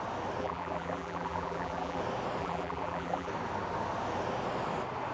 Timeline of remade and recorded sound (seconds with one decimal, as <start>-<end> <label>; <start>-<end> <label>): 0.0-0.4 recorded; 0.4-2.0 remade; 2.0-2.4 recorded; 2.4-3.3 remade; 3.3-5.1 recorded